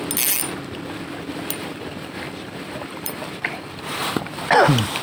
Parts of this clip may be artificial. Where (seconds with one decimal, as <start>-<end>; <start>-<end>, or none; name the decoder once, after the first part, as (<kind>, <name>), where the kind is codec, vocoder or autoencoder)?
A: 1.6-4.4 (vocoder, BigVGAN v2)